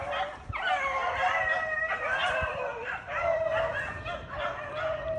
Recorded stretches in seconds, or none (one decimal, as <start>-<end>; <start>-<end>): 0.0-2.2; 4.0-5.2